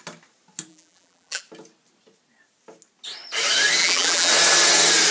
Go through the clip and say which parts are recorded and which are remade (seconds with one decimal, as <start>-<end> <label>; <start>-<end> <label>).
0.0-0.7 recorded; 0.7-1.4 remade; 1.4-3.8 recorded; 3.8-4.3 remade; 4.3-5.1 recorded

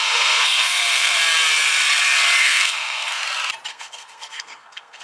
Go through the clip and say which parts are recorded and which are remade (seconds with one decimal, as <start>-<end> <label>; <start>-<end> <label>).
0.0-1.2 remade; 1.2-2.4 recorded; 2.4-3.2 remade; 3.2-3.7 recorded; 3.7-5.0 remade

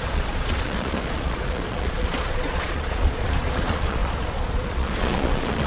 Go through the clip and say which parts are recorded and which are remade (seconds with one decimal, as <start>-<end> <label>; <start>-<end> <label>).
0.0-5.7 remade

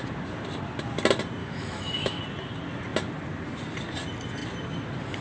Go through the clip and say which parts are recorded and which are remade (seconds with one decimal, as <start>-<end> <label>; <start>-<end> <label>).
0.0-1.4 recorded; 1.4-2.2 remade; 2.2-5.2 recorded

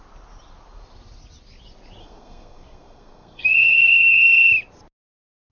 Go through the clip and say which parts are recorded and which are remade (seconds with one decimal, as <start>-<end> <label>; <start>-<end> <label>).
0.0-2.0 recorded; 2.0-4.5 remade; 4.5-5.5 recorded

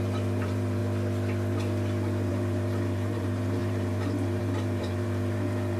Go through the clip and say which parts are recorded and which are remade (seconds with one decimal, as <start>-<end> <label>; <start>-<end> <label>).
0.0-0.8 remade; 0.8-2.3 recorded; 2.3-5.8 remade